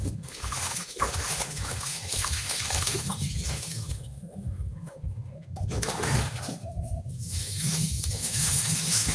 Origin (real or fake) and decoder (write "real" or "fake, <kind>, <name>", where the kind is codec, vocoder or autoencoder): fake, autoencoder, DAC-VAE